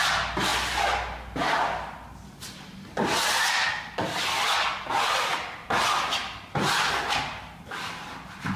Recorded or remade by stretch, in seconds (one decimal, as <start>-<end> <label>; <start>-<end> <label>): 0.0-8.6 recorded